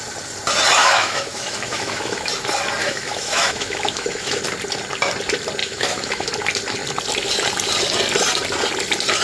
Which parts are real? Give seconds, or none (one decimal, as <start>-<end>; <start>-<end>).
0.0-0.8; 2.3-2.8; 4.4-5.6; 6.3-9.2